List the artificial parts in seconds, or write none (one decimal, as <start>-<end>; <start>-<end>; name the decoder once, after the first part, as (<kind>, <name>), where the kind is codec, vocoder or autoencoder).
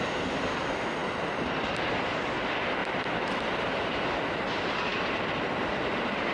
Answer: 1.0-2.3 (vocoder, BigVGAN v2); 2.8-3.9